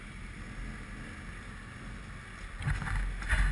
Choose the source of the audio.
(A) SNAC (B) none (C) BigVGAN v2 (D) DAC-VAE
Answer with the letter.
B